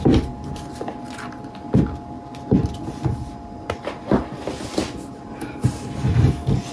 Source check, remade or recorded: recorded